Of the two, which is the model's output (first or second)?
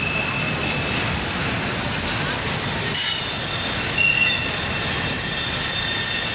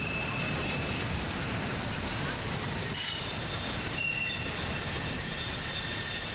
second